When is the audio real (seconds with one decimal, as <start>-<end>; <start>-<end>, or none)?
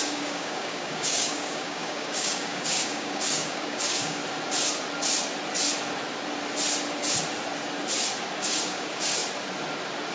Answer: 4.2-8.4; 9.2-10.1